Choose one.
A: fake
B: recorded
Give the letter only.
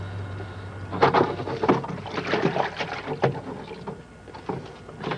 B